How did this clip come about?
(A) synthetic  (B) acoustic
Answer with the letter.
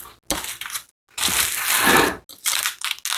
B